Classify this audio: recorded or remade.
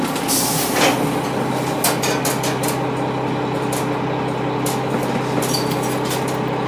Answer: recorded